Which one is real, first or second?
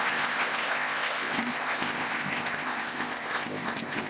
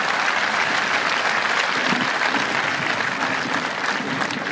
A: second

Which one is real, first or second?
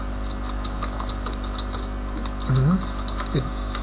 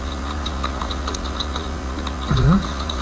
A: first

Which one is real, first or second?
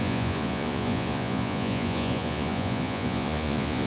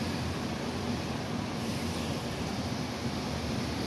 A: second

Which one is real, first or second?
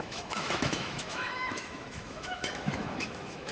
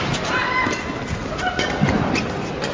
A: second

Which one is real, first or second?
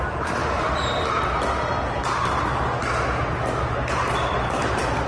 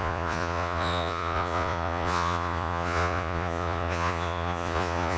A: first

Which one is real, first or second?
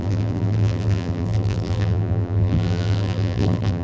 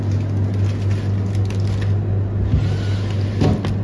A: second